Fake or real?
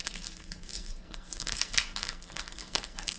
fake